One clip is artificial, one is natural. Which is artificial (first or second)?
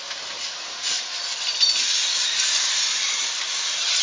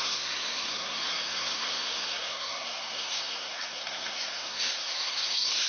second